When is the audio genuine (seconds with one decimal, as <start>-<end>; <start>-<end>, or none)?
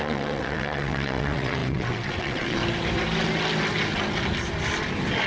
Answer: 2.6-5.3